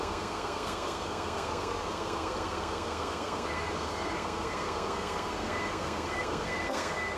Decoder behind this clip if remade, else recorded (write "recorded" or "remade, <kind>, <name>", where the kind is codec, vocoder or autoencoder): remade, codec, SNAC